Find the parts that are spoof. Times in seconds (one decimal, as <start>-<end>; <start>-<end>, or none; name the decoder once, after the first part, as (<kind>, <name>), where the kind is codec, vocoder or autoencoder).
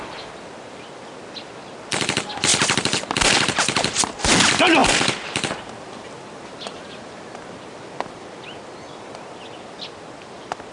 4.8-5.7 (vocoder, BigVGAN v2)